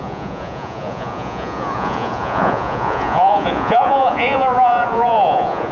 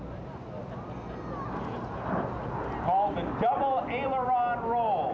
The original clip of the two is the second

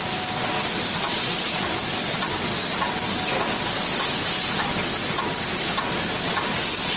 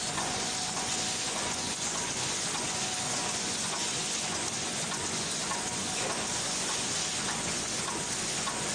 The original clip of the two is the first